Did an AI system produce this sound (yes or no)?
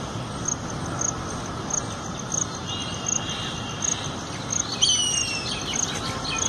no